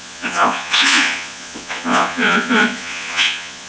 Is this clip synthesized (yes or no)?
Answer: yes